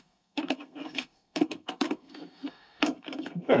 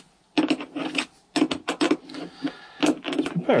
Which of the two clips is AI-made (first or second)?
first